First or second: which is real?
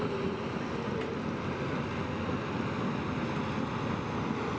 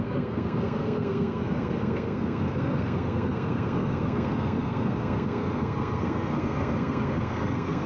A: first